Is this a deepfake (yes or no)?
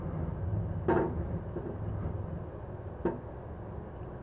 no